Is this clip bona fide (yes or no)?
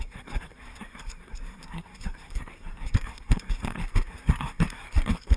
no